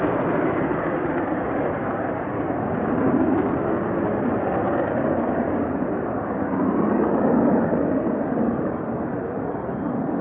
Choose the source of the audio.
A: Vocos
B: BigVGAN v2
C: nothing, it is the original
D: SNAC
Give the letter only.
B